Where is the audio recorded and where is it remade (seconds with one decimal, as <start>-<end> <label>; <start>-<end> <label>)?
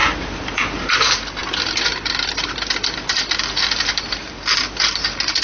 0.0-5.4 recorded